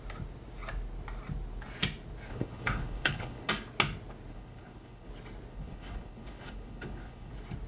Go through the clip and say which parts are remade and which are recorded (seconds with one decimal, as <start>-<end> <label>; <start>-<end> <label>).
0.0-2.3 recorded; 2.3-3.5 remade; 3.5-4.3 recorded; 4.3-5.1 remade; 5.1-5.5 recorded; 5.5-7.3 remade; 7.3-7.7 recorded